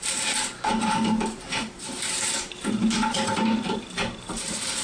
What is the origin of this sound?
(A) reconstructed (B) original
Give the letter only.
A